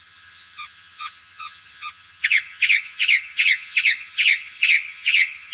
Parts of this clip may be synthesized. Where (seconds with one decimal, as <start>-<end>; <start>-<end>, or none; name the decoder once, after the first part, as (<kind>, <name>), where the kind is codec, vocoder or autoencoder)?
0.0-5.5 (vocoder, HiFi-GAN)